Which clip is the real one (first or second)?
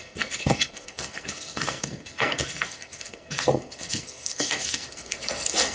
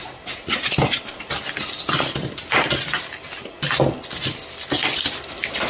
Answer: second